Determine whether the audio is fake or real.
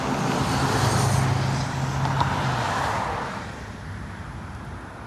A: real